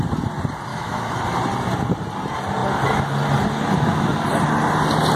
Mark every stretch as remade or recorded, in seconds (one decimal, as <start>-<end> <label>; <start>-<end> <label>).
0.0-0.7 recorded; 0.7-1.2 remade; 1.2-5.2 recorded